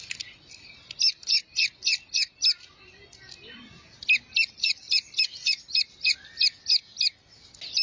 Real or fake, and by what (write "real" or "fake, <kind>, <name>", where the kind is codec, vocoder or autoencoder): real